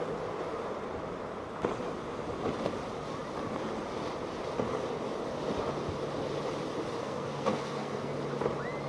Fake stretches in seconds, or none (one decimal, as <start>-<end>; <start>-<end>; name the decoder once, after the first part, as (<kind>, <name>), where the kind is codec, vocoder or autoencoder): 7.0-8.1 (codec, SNAC)